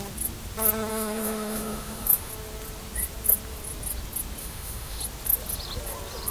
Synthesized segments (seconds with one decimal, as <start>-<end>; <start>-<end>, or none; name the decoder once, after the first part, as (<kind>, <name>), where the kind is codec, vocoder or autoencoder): 0.9-2.3 (autoencoder, DAC-VAE); 4.4-5.0